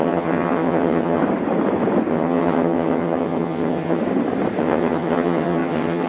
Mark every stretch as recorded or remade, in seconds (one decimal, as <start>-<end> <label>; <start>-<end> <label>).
0.0-1.2 remade; 1.2-2.1 recorded; 2.1-4.0 remade; 4.0-4.6 recorded; 4.6-6.1 remade